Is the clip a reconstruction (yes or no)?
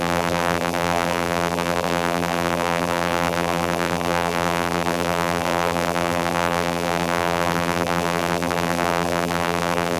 yes